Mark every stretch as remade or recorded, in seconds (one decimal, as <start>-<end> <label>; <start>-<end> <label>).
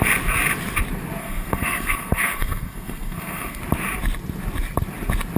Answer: 0.0-1.2 recorded; 1.2-3.6 remade; 3.6-5.4 recorded